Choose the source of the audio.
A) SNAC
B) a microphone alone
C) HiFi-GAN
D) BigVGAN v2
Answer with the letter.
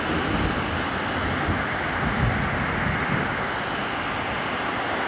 B